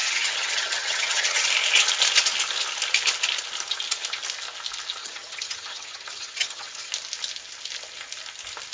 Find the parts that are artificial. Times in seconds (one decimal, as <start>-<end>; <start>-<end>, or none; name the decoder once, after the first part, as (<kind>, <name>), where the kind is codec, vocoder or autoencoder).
0.0-1.5 (vocoder, HiFi-GAN); 5.0-6.9